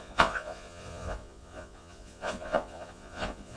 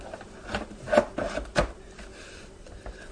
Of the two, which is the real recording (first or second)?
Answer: second